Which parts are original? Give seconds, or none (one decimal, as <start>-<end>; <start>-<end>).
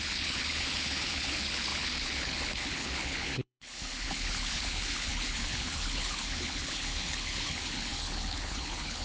none